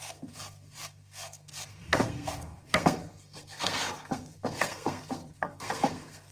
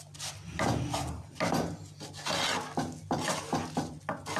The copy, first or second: first